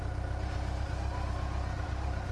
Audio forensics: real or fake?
real